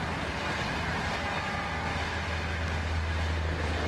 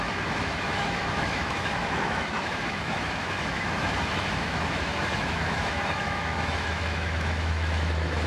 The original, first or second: first